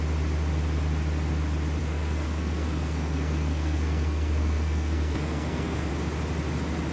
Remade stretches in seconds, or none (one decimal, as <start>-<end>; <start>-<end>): 1.8-5.9

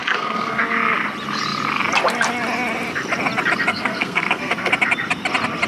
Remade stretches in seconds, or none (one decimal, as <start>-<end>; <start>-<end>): 0.0-0.6; 3.7-4.7

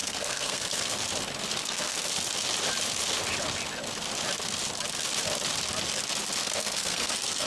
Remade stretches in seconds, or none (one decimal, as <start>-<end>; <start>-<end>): 0.0-1.0; 1.6-2.1; 6.4-7.5

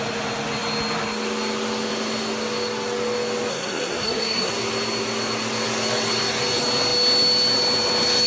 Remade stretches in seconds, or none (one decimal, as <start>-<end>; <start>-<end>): 3.5-4.5

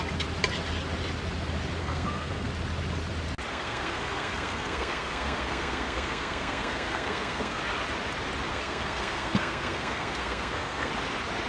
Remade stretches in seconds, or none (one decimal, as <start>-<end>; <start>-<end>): 1.8-2.5; 3.5-7.6; 8.5-10.9